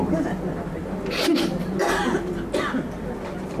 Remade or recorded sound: recorded